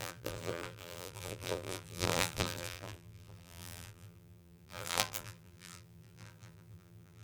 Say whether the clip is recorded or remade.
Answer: remade